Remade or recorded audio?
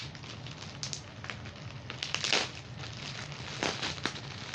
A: recorded